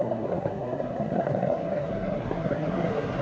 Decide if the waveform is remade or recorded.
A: remade